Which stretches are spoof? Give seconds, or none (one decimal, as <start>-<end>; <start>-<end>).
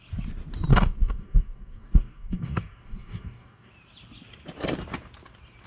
0.7-3.7